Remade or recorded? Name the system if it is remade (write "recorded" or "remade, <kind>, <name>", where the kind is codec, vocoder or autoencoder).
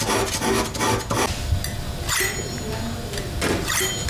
recorded